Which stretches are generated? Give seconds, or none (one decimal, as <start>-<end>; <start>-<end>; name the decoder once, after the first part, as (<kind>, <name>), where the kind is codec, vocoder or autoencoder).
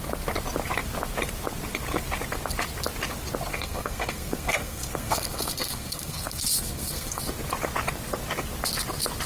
3.5-7.2 (codec, SNAC)